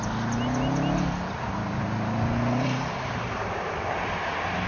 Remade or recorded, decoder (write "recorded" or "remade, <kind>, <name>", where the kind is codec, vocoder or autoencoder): recorded